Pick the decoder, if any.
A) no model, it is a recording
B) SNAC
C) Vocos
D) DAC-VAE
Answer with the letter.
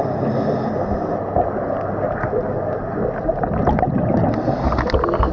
A